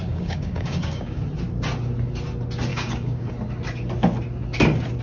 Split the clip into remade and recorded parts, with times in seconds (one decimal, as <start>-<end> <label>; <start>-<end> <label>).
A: 0.0-1.2 remade; 1.2-2.7 recorded; 2.7-3.3 remade; 3.3-5.0 recorded